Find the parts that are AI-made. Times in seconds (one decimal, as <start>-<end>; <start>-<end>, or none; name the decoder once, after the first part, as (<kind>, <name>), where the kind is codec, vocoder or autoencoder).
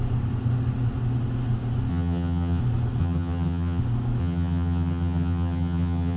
1.9-2.6 (vocoder, HiFi-GAN); 3.0-3.8; 4.2-6.2